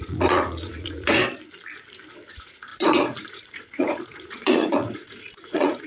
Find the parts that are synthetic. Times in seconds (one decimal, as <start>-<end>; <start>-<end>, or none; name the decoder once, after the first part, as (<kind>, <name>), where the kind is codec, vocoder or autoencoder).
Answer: 0.0-1.2 (vocoder, Vocos); 2.3-5.9